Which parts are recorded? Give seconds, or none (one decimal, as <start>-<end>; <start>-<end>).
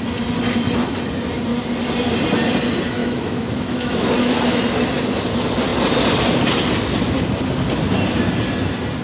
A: 0.0-3.0; 4.6-9.0